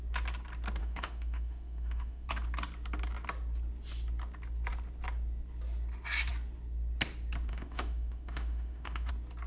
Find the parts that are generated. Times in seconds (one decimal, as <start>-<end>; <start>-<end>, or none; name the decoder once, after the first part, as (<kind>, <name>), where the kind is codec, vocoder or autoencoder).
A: 0.8-2.3 (autoencoder, DAC-VAE); 7.5-9.1